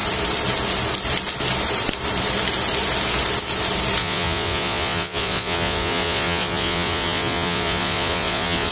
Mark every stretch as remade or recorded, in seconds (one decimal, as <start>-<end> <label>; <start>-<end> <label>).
0.0-4.0 recorded; 4.0-8.7 remade